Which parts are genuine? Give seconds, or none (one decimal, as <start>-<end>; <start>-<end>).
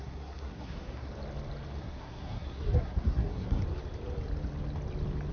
1.1-1.8; 3.6-5.3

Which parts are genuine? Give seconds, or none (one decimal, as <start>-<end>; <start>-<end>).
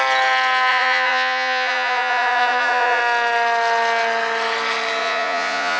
0.0-0.7; 3.0-5.0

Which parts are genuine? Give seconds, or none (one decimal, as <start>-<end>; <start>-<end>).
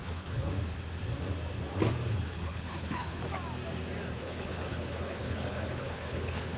0.5-2.1; 3.2-4.2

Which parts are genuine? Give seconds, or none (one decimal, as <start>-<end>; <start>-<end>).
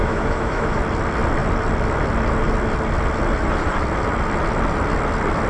0.8-5.5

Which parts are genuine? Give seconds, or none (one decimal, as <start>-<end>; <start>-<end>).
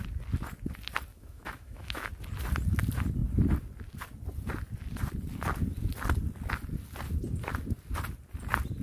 0.0-1.1; 2.1-8.8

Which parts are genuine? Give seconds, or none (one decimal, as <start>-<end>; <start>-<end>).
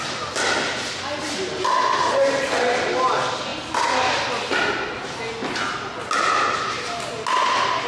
0.0-7.9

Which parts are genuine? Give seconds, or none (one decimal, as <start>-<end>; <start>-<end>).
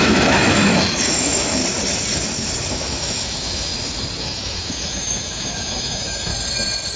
1.6-2.7; 3.7-4.2; 6.3-7.0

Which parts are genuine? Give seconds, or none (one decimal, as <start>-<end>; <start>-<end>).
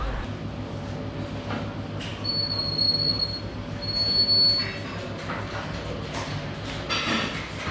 0.0-7.7